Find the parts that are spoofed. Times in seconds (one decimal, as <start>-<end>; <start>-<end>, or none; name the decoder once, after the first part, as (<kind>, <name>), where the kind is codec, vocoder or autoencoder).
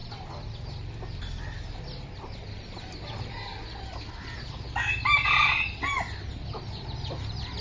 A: none